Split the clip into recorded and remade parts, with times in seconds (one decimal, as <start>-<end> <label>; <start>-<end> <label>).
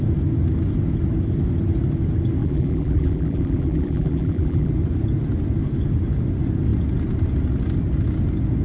0.0-2.4 recorded; 2.4-4.7 remade; 4.7-8.6 recorded